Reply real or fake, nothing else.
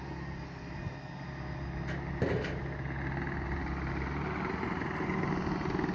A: real